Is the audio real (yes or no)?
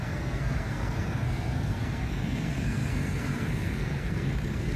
no